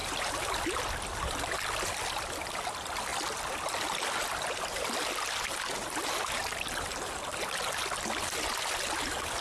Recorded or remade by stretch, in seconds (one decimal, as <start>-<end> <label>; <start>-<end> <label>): 0.0-9.4 recorded

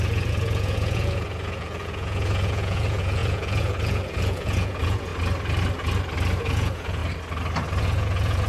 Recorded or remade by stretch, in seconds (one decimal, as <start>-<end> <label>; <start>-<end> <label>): 0.0-5.1 remade; 5.1-6.4 recorded; 6.4-7.0 remade; 7.0-7.8 recorded; 7.8-8.5 remade